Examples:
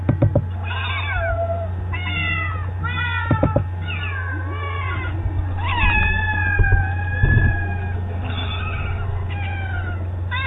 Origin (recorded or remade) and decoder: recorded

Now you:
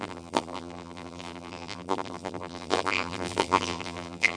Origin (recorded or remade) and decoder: remade, vocoder, BigVGAN v2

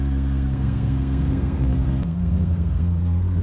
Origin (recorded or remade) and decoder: remade, codec, SNAC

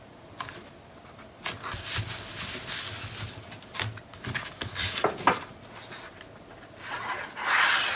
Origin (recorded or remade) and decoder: recorded